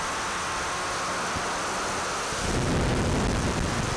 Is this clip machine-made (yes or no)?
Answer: no